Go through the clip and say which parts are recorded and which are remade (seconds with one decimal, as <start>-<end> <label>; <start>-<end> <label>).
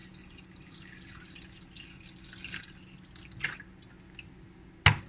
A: 0.0-5.1 recorded